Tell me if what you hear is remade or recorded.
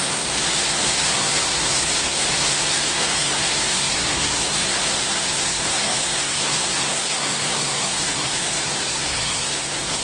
remade